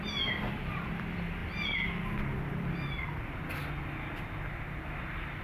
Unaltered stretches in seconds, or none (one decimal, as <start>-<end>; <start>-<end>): 0.0-5.4